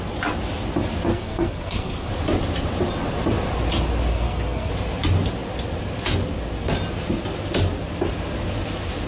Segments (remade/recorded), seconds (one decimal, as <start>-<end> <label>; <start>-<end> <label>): 0.0-1.1 recorded; 1.1-2.1 remade; 2.1-4.1 recorded; 4.1-4.7 remade; 4.7-9.1 recorded